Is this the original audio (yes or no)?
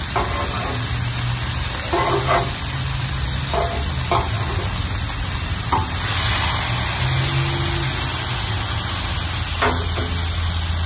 yes